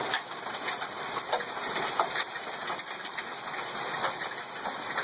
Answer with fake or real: real